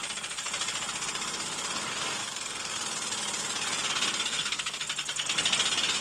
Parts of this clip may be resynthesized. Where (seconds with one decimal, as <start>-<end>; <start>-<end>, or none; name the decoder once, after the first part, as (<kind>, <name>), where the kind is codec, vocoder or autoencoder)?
2.2-2.7 (codec, SNAC); 4.3-4.8